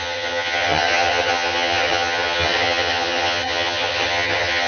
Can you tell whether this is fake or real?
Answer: fake